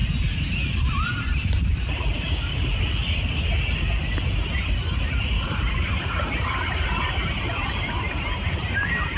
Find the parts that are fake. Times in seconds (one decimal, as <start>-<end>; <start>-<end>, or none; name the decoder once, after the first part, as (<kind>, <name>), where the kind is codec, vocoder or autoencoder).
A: 1.3-2.7 (vocoder, BigVGAN v2); 5.7-9.2